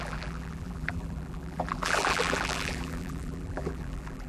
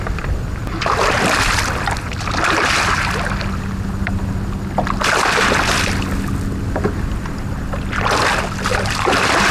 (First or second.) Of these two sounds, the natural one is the second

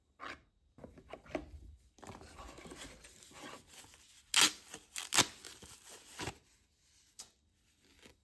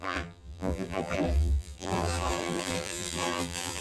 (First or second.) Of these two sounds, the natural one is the first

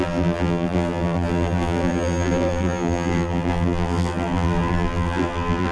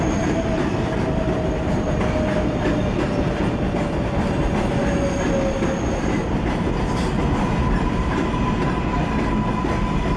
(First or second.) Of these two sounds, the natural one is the second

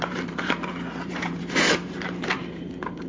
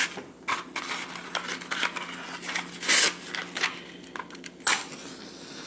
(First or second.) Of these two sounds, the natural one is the second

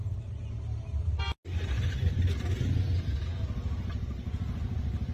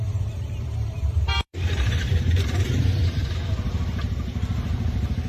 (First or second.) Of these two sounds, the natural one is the first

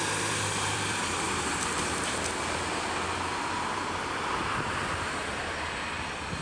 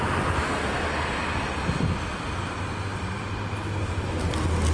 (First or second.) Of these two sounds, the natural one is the second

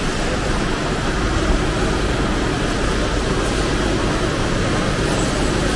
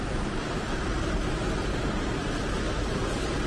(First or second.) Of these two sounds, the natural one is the first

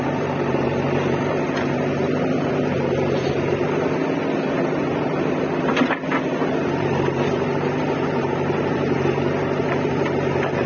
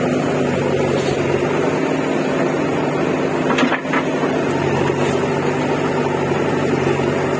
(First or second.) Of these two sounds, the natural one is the second